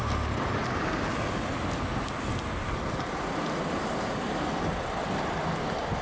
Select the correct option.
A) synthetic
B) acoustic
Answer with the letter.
B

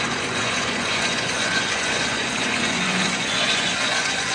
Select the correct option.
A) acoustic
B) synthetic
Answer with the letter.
B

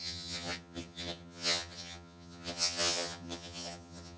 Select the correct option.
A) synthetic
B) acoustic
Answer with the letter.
A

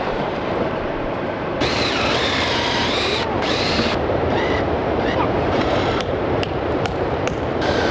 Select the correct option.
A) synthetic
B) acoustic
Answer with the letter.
A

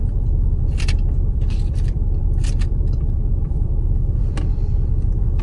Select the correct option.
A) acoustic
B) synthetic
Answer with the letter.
B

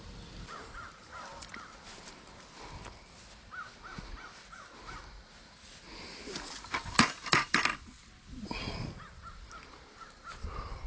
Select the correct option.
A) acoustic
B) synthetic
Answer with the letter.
A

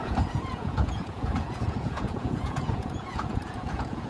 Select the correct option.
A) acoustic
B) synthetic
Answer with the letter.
B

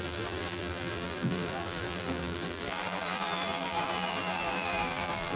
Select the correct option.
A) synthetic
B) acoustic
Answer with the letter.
A